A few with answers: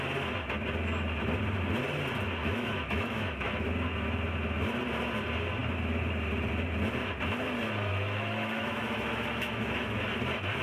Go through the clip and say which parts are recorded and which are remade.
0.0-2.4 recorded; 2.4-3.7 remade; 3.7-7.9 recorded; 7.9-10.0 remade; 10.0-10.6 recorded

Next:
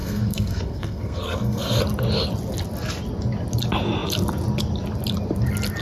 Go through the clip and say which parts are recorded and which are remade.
0.0-1.8 remade; 1.8-5.8 recorded

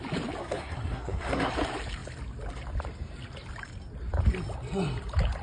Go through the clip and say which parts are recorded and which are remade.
0.0-0.4 recorded; 0.4-1.5 remade; 1.5-5.4 recorded

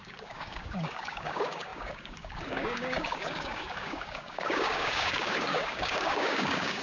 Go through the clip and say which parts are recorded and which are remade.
0.0-6.8 remade

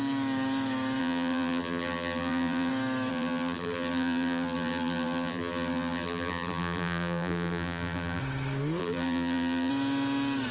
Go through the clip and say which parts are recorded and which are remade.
0.0-1.0 recorded; 1.0-2.7 remade; 2.7-3.1 recorded; 3.1-8.2 remade; 8.2-8.8 recorded; 8.8-9.7 remade; 9.7-10.5 recorded

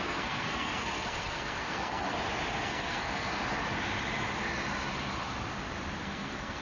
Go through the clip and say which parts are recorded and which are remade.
0.0-2.1 remade; 2.1-2.6 recorded; 2.6-3.4 remade; 3.4-6.0 recorded; 6.0-6.6 remade

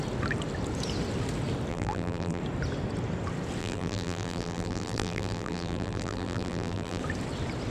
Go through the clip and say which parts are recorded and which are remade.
0.0-1.7 recorded; 1.7-2.4 remade; 2.4-3.6 recorded; 3.6-7.0 remade; 7.0-7.7 recorded